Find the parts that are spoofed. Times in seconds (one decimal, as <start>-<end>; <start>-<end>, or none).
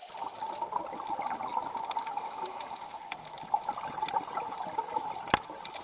none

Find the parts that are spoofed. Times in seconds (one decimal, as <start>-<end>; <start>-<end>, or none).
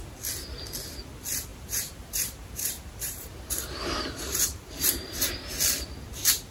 1.5-5.3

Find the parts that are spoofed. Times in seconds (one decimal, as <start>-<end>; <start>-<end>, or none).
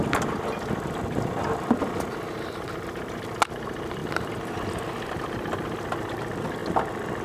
none